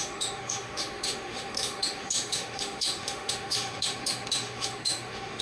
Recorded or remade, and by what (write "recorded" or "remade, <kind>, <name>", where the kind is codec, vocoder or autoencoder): remade, autoencoder, DAC-VAE